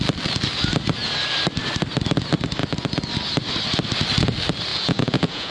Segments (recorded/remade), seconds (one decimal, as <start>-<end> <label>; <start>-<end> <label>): 0.0-4.7 recorded; 4.7-5.5 remade